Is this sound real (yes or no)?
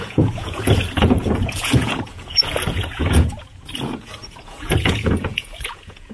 no